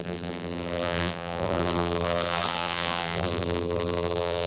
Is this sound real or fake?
fake